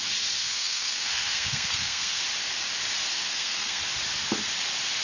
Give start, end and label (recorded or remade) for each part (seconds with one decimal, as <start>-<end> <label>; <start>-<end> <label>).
0.0-0.4 recorded; 0.4-2.2 remade; 2.2-3.1 recorded; 3.1-3.8 remade; 3.8-5.0 recorded